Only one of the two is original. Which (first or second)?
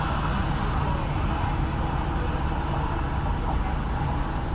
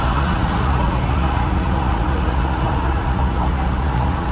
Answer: first